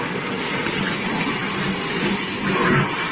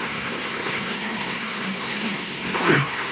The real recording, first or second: first